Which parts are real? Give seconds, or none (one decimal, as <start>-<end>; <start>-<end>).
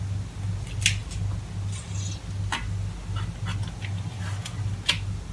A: 0.0-5.3